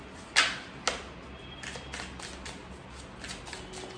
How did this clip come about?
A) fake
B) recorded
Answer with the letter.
B